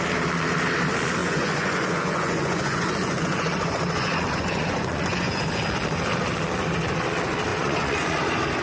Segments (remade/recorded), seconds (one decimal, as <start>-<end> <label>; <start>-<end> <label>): 0.0-1.2 recorded; 1.2-5.4 remade; 5.4-7.5 recorded; 7.5-8.2 remade; 8.2-8.6 recorded